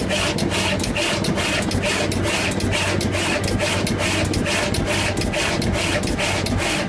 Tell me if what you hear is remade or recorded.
recorded